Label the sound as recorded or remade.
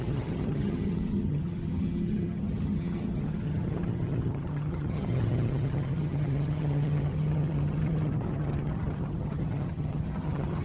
remade